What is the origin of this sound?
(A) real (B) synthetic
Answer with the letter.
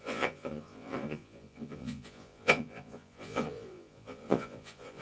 B